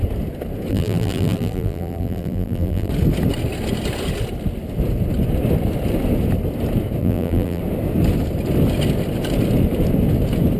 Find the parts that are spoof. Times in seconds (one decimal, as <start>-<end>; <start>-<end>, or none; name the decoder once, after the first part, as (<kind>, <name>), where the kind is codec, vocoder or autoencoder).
0.7-2.9 (vocoder, BigVGAN v2); 7.0-7.6